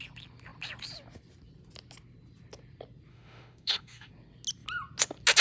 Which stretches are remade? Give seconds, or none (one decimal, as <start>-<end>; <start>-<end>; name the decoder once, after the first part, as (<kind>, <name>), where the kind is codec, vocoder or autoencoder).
3.1-4.1 (autoencoder, DAC-VAE)